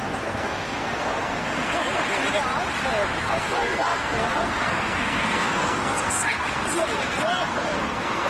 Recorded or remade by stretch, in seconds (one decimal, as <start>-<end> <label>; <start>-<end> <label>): 0.0-2.2 remade; 2.2-3.2 recorded; 3.2-8.3 remade